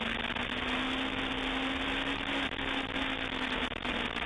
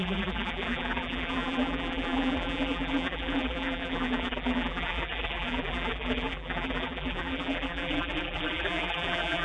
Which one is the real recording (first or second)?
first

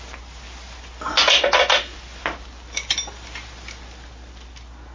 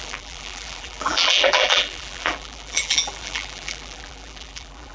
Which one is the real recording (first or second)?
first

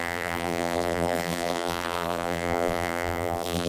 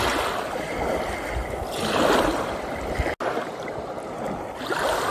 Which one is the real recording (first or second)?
second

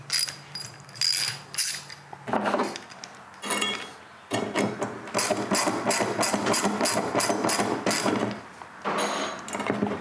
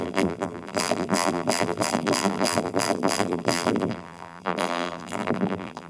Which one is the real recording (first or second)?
first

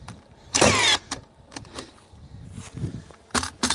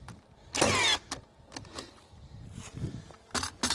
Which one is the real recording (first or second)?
second